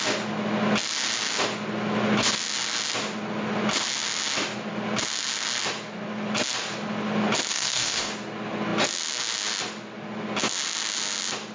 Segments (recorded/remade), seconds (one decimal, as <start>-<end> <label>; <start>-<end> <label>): 0.0-7.5 recorded; 7.5-8.1 remade; 8.1-11.5 recorded